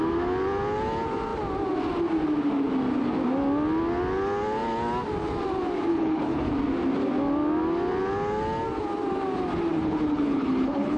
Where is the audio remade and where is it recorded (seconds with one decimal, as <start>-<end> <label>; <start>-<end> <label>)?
0.0-5.9 recorded; 5.9-6.5 remade; 6.5-9.7 recorded; 9.7-11.0 remade